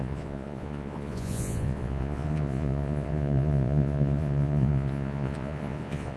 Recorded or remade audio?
remade